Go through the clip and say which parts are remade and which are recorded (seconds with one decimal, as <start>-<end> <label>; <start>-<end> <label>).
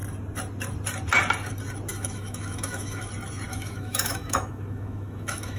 0.0-1.9 recorded; 1.9-3.1 remade; 3.1-3.5 recorded; 3.5-5.6 remade